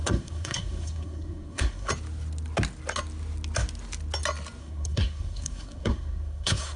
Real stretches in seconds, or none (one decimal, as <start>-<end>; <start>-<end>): 1.9-4.6

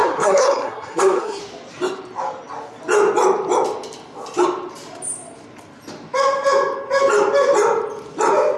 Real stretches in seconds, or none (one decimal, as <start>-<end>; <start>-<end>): 1.4-8.6

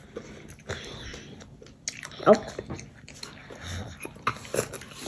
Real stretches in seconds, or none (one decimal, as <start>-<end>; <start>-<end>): 0.0-5.1